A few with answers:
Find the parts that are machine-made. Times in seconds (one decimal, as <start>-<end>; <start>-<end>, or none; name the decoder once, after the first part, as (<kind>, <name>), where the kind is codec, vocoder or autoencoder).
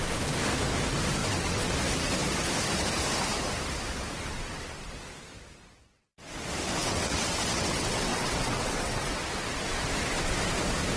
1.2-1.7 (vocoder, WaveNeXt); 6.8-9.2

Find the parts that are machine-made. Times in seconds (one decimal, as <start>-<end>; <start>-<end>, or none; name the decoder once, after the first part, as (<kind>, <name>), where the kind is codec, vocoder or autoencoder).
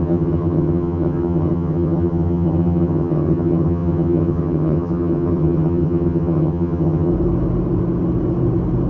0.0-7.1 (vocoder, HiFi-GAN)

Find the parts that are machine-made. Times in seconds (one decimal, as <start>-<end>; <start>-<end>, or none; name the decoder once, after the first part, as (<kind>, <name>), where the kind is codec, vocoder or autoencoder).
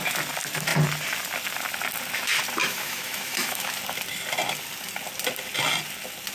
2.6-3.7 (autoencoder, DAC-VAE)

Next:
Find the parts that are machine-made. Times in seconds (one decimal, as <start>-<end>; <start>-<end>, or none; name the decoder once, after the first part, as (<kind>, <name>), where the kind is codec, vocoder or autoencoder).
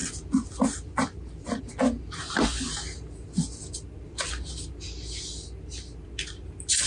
none